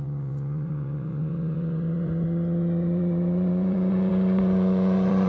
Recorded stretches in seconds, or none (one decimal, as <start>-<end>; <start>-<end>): none